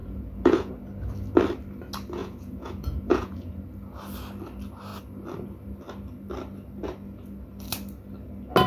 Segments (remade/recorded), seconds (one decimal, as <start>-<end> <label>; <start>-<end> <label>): 0.0-0.7 remade; 0.7-2.2 recorded; 2.2-3.6 remade; 3.6-8.7 recorded